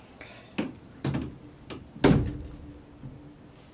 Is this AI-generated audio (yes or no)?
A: no